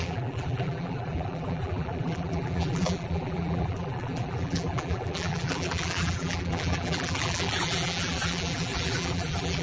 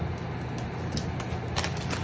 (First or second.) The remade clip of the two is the first